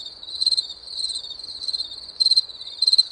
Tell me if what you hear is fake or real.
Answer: fake